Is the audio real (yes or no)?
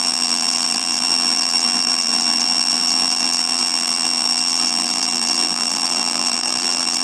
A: no